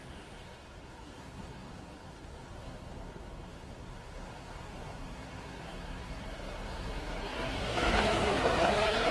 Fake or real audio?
fake